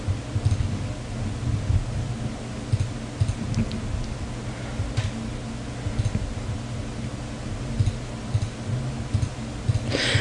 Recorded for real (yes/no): yes